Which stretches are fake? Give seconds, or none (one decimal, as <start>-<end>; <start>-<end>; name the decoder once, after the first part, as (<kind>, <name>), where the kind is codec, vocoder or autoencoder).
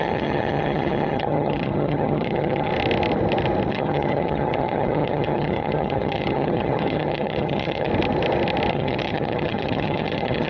0.0-2.7 (vocoder, HiFi-GAN); 3.7-7.9; 8.7-10.5